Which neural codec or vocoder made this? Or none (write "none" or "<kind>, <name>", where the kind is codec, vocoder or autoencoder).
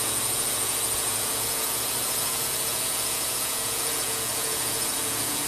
vocoder, Vocos